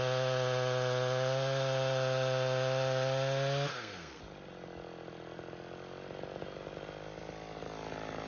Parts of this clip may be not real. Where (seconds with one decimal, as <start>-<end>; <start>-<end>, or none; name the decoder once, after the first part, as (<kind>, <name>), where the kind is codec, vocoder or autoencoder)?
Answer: 3.7-4.2 (codec, SNAC)